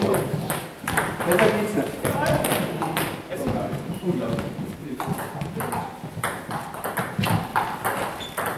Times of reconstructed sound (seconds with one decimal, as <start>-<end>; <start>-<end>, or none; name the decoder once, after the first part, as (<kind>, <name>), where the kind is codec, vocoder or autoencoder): none